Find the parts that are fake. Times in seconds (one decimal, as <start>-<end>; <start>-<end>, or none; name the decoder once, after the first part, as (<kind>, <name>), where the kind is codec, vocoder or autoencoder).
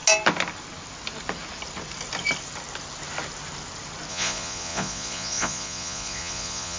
4.1-6.8 (vocoder, Vocos)